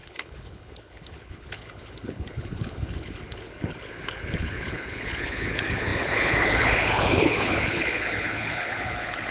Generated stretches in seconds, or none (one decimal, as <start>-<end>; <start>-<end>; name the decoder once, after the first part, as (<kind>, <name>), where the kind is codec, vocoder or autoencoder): 0.0-9.3 (codec, HILCodec)